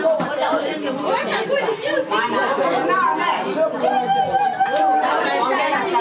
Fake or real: real